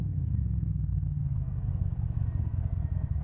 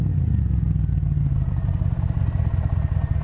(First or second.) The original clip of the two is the second